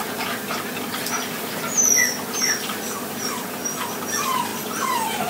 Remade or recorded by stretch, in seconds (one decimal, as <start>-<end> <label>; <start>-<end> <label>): 0.0-5.3 recorded